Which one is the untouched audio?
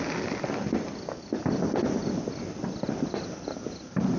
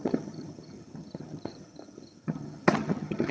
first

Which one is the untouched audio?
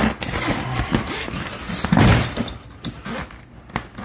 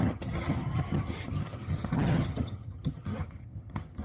first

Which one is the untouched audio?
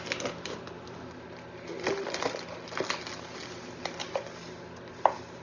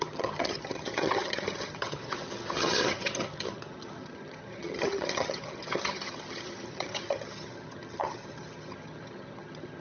first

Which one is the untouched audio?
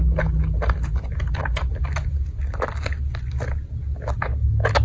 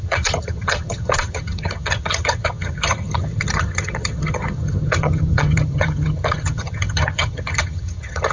first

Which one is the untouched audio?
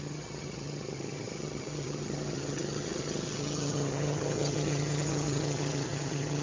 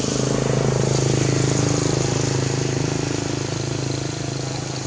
second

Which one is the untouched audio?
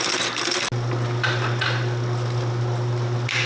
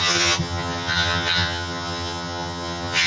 first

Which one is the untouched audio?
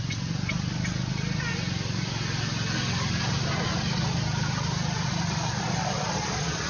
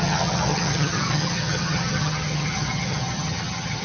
first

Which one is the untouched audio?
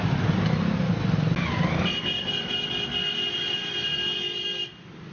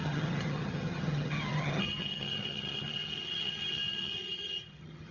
first